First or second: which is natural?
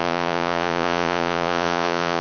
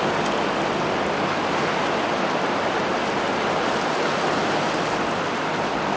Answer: second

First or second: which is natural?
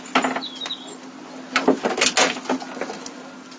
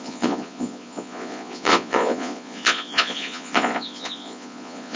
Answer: first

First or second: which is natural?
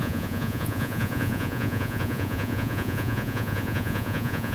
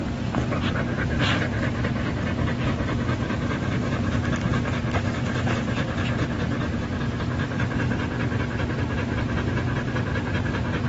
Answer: second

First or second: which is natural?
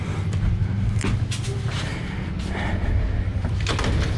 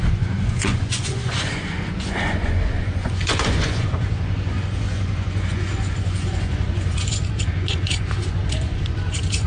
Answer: first